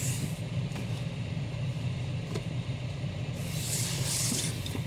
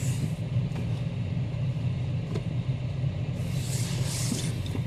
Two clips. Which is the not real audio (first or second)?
first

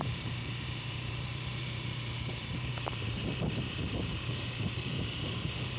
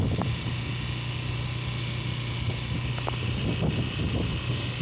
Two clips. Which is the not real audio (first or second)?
first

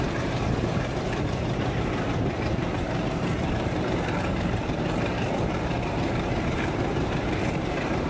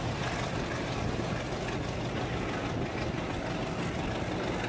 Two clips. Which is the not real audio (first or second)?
first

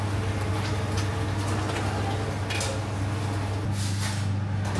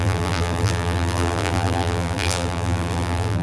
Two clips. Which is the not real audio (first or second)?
second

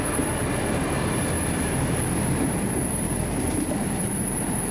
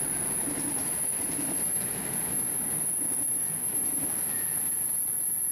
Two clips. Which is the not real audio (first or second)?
first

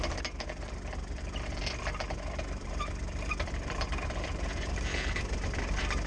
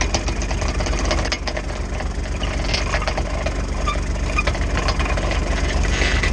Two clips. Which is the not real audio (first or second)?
first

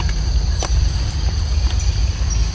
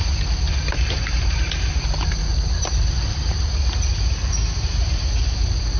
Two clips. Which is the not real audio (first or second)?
first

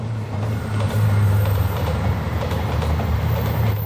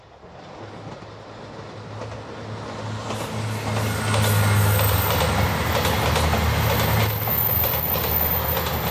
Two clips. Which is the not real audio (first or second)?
first